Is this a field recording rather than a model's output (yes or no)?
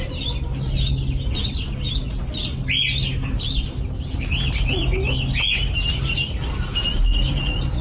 yes